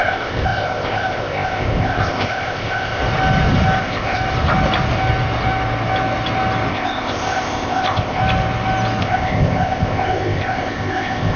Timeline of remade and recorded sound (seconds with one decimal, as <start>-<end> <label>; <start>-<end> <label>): 0.0-3.0 remade; 3.0-3.8 recorded; 3.8-4.2 remade; 4.2-6.7 recorded; 6.7-8.2 remade; 8.2-9.0 recorded; 9.0-11.4 remade